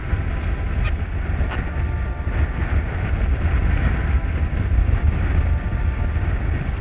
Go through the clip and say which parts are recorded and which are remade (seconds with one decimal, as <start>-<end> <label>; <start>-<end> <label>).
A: 0.0-6.8 recorded